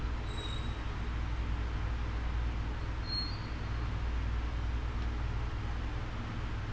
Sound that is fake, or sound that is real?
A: real